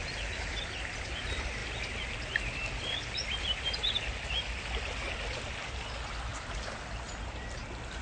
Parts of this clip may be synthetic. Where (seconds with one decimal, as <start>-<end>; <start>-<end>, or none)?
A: none